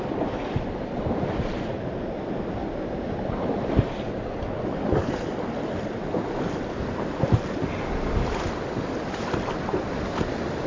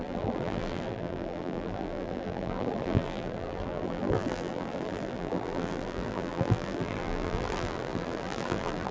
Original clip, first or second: first